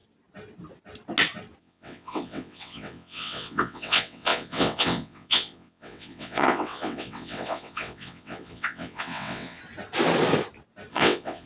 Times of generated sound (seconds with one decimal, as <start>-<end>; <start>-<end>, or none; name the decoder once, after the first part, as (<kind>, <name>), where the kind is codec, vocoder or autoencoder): 1.6-9.6 (vocoder, WaveNeXt); 10.9-11.5